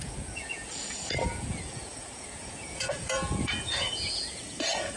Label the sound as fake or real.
fake